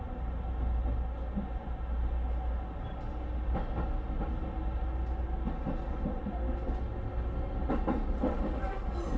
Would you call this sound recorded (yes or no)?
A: yes